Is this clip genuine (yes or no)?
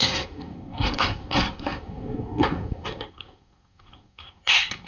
no